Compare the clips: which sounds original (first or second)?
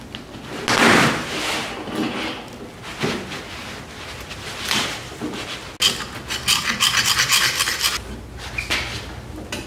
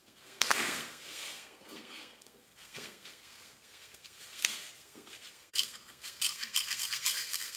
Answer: first